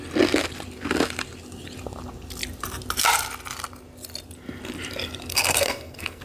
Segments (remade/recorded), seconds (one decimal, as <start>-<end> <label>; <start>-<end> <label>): 0.0-5.3 recorded; 5.3-6.2 remade